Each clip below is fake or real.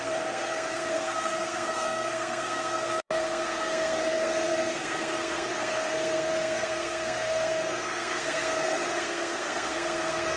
fake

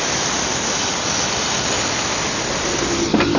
real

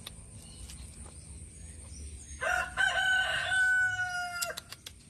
real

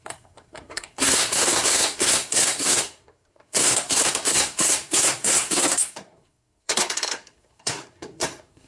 fake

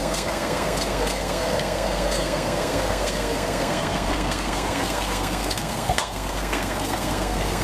fake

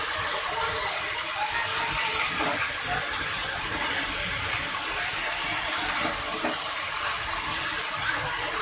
real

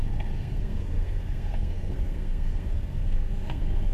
fake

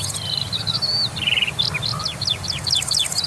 real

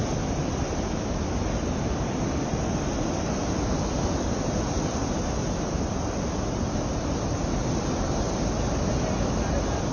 real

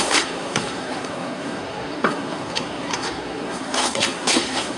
fake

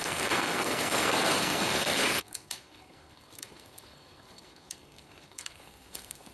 fake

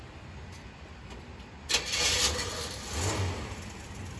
real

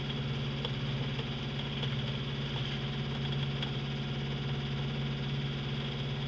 real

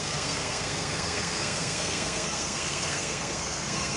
fake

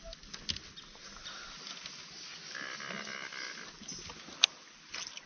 real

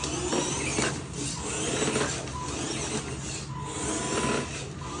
real